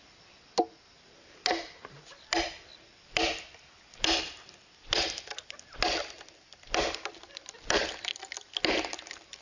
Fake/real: real